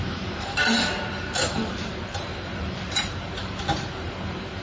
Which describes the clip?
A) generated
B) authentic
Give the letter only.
A